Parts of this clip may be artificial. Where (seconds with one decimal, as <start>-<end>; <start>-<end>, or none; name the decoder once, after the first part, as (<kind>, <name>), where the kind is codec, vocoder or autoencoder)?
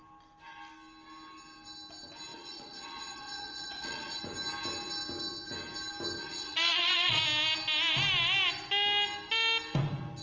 2.3-4.2 (vocoder, Vocos); 6.2-7.2